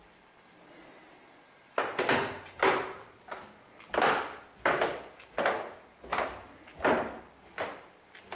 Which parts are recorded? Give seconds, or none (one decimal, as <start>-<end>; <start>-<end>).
0.0-8.4